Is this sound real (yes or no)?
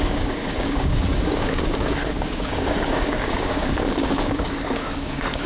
no